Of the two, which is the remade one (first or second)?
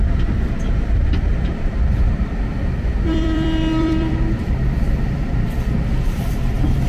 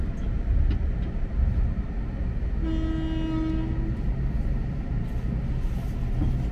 first